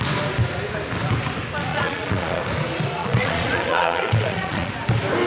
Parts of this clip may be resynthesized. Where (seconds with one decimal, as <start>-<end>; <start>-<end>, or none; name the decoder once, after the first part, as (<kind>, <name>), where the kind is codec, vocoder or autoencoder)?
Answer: 1.7-2.4 (vocoder, Vocos); 3.0-4.7